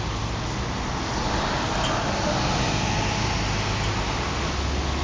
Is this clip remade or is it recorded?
recorded